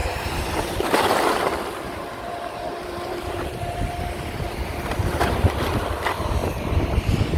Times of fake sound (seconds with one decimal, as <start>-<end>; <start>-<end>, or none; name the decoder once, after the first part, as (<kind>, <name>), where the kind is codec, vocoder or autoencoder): 0.0-4.1 (vocoder, BigVGAN v2); 6.4-7.0